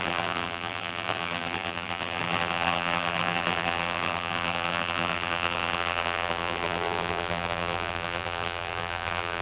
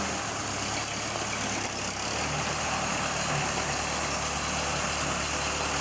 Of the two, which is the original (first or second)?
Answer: second